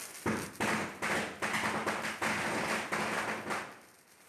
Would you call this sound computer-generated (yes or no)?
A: no